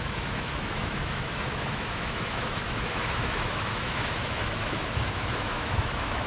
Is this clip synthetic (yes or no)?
yes